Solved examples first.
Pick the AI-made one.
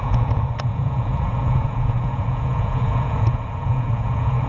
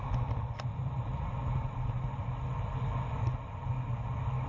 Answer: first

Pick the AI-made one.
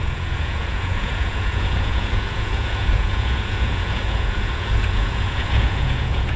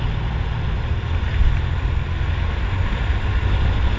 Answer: first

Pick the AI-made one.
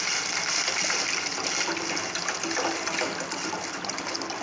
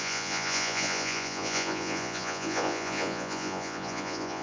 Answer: second